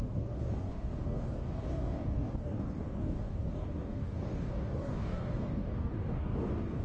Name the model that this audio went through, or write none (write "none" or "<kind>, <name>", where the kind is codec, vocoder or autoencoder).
codec, DAC